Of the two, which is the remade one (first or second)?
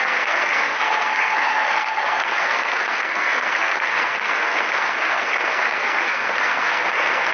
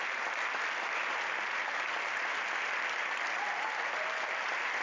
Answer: first